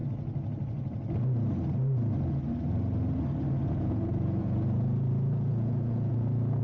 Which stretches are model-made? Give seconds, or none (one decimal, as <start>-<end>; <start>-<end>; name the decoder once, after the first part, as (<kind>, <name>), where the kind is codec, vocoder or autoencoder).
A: 3.7-6.6 (vocoder, Vocos)